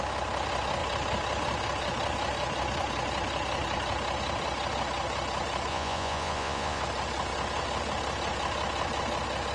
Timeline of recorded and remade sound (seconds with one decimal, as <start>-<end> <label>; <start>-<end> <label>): 0.0-5.7 recorded; 5.7-6.8 remade; 6.8-9.5 recorded